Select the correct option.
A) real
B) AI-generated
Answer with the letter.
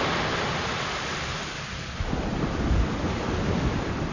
A